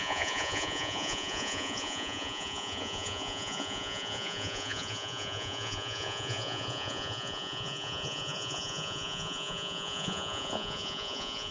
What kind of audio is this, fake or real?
fake